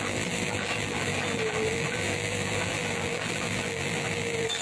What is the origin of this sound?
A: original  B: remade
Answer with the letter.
B